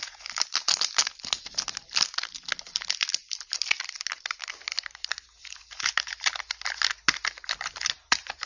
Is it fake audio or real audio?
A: real